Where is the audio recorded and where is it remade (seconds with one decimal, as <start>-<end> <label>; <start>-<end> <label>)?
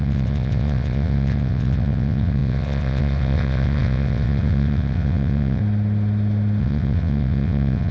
0.0-5.6 remade; 5.6-6.6 recorded; 6.6-7.9 remade